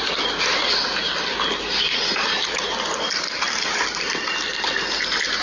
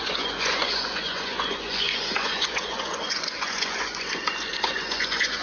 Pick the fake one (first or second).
second